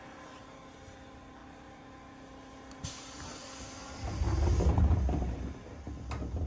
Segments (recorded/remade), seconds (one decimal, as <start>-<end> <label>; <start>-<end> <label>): 0.0-6.5 recorded